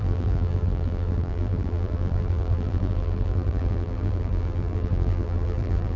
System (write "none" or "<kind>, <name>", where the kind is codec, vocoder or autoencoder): vocoder, BigVGAN v2